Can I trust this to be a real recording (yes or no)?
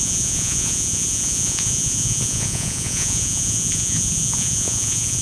no